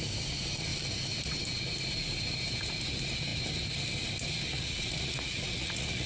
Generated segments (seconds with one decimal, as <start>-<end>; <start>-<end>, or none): 4.5-6.1